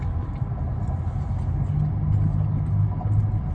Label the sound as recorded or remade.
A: recorded